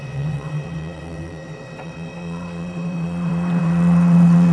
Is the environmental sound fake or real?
fake